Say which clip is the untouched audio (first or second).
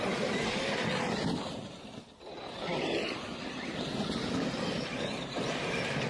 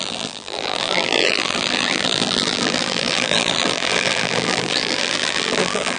first